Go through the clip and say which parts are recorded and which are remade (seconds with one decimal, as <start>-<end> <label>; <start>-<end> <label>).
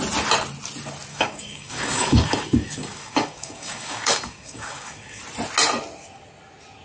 0.0-1.1 recorded; 1.1-5.2 remade; 5.2-6.8 recorded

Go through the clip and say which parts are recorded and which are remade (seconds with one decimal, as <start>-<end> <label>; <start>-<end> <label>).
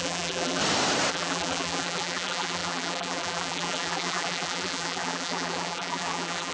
0.0-0.6 remade; 0.6-1.1 recorded; 1.1-6.5 remade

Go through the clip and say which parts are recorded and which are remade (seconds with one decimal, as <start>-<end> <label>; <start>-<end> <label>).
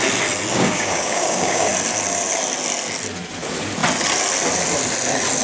0.0-0.5 recorded; 0.5-1.7 remade; 1.7-5.4 recorded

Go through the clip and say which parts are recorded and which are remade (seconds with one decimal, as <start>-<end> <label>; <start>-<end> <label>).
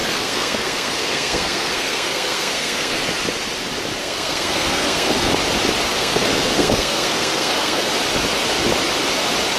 0.0-3.0 remade; 3.0-4.0 recorded; 4.0-5.3 remade; 5.3-5.9 recorded; 5.9-7.9 remade; 7.9-9.6 recorded